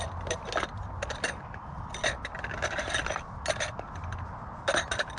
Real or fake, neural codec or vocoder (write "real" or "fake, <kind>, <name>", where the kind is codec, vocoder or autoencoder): real